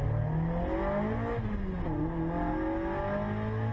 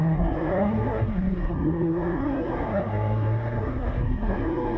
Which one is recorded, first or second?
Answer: first